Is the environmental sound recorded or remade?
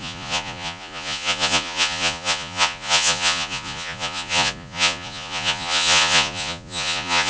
remade